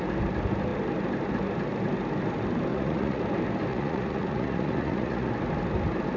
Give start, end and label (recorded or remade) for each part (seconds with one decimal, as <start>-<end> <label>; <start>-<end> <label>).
0.0-2.7 recorded; 2.7-3.2 remade; 3.2-3.7 recorded; 3.7-5.3 remade; 5.3-6.2 recorded